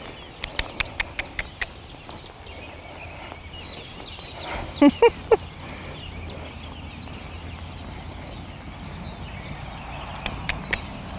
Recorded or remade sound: recorded